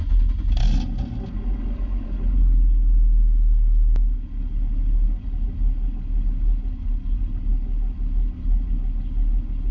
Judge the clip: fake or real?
real